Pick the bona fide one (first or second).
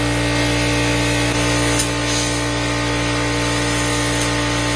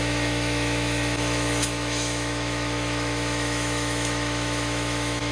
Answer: first